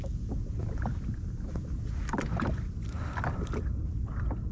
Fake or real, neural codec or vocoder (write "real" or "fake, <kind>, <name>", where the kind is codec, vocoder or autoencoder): real